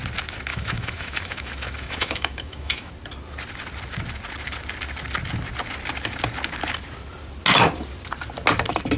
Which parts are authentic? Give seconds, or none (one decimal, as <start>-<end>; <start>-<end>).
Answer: 0.0-0.5; 2.9-9.0

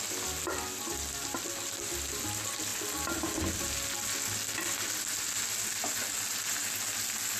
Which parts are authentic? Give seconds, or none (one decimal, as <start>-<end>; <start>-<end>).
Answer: 0.0-7.4

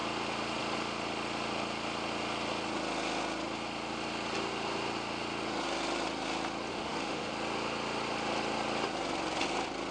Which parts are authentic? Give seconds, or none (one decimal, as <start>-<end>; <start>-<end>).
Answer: 0.0-6.7; 7.3-9.9

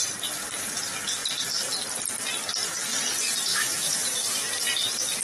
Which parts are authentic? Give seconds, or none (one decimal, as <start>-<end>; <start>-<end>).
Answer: 0.0-3.5; 4.4-5.2

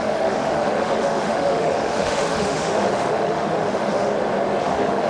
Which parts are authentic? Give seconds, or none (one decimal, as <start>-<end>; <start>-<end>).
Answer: 4.1-4.6

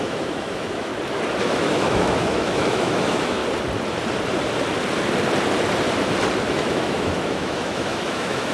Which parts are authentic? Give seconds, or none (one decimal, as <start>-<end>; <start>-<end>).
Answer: 0.9-1.4; 3.4-6.5

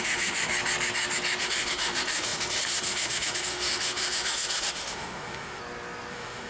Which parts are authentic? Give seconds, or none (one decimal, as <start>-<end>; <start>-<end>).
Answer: 0.5-1.4; 5.6-6.1